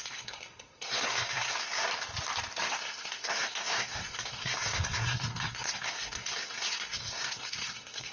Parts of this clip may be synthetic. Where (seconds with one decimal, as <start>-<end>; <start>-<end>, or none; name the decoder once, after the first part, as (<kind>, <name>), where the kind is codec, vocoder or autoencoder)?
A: 0.0-1.9 (codec, SNAC); 2.7-8.1